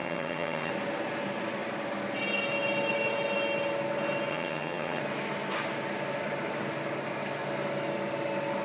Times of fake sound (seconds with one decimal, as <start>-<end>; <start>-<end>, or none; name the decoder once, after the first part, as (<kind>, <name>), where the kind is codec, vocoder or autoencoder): 0.0-0.7 (vocoder, HiFi-GAN); 4.3-5.0